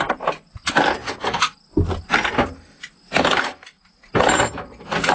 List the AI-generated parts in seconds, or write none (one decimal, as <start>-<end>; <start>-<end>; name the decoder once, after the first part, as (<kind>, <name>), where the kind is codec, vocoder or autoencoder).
none